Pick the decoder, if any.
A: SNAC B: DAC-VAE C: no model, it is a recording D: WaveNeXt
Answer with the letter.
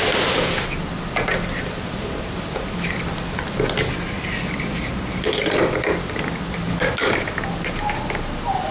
C